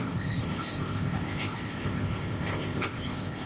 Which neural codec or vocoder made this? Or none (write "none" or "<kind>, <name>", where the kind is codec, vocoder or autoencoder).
codec, ZipCodec